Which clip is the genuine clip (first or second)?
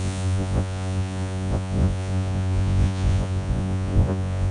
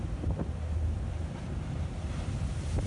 second